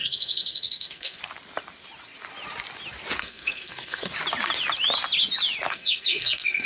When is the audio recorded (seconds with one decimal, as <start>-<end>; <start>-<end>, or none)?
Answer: 1.2-3.2; 4.1-5.7